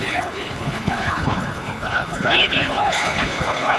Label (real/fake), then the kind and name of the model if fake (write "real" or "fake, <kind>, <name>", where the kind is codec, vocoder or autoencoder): fake, codec, HILCodec